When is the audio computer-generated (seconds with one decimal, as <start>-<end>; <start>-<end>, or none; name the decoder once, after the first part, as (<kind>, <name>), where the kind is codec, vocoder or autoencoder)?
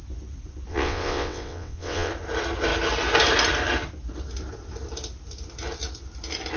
0.7-2.1 (vocoder, WaveNeXt)